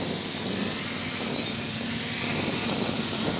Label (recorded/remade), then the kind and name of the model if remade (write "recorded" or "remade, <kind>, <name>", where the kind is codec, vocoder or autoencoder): recorded